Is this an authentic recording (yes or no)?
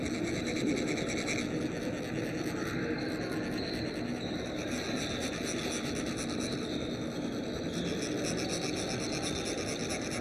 yes